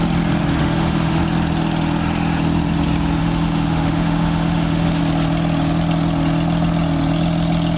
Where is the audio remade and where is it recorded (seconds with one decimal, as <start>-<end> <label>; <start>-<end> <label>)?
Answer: 0.0-0.6 recorded; 0.6-1.2 remade; 1.2-3.2 recorded; 3.2-5.0 remade; 5.0-7.8 recorded